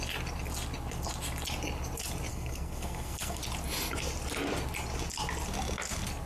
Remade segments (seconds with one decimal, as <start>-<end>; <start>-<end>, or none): 2.3-3.4